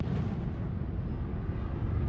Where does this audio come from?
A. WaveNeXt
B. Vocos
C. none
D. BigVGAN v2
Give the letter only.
C